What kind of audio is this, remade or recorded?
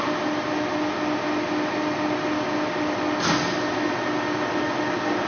recorded